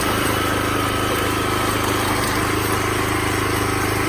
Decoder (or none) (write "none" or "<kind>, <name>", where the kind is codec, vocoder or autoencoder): vocoder, BigVGAN v2